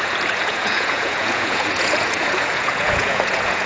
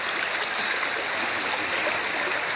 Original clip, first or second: second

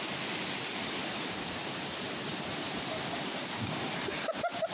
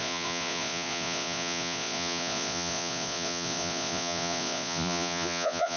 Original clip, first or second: first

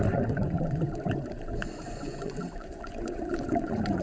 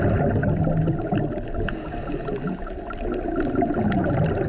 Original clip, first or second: second